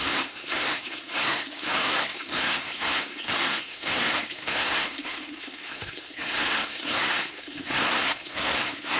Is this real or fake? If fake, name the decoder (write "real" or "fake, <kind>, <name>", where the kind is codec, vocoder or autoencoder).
fake, codec, SNAC